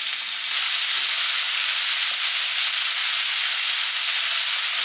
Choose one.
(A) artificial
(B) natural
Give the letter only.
B